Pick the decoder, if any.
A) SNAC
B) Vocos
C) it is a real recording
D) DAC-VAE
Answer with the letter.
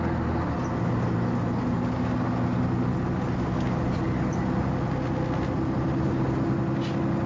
C